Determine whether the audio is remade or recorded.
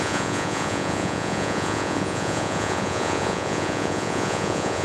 remade